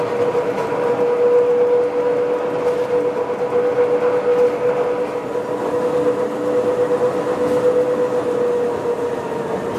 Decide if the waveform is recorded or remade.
recorded